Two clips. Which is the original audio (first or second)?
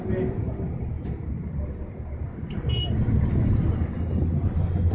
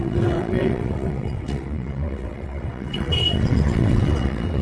first